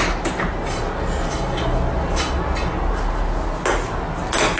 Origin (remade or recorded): recorded